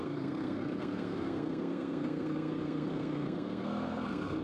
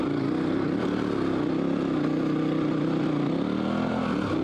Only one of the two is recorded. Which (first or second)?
second